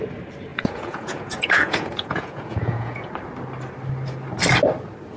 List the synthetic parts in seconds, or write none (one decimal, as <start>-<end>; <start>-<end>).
0.5-3.1

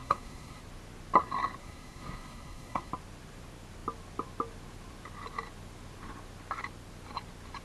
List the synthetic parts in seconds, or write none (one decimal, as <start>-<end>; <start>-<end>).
0.0-0.6; 1.6-2.9

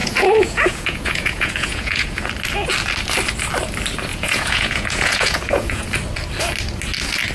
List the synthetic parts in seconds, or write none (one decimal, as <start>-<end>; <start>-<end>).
0.0-2.3; 4.1-5.9

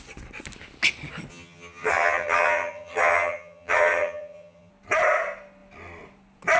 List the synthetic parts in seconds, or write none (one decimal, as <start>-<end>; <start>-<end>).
1.3-4.7

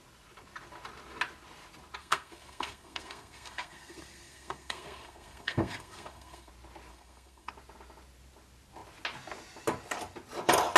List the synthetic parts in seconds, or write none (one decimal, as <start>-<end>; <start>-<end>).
2.0-6.5; 6.9-7.5

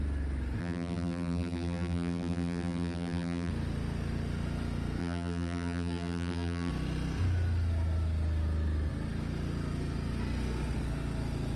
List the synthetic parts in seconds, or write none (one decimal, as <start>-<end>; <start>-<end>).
0.6-3.5; 5.0-6.7

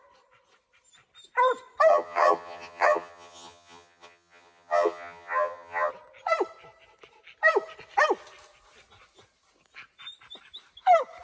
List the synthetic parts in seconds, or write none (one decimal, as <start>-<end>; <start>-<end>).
1.9-5.9

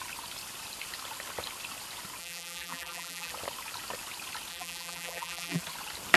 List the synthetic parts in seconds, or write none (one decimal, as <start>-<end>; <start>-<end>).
2.2-3.3; 4.5-5.6